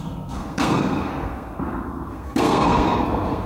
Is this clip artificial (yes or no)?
yes